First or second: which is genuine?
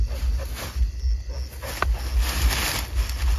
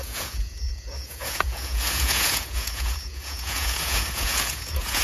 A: first